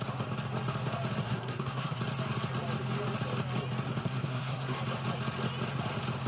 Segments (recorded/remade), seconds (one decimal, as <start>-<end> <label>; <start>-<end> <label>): 0.0-1.2 recorded; 1.2-2.0 remade; 2.0-4.0 recorded; 4.0-4.8 remade; 4.8-6.3 recorded